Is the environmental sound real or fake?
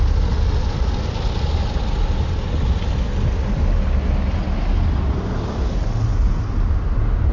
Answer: real